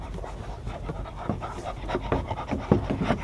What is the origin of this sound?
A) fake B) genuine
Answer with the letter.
B